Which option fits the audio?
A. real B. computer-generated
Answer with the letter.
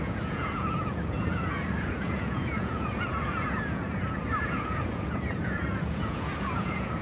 B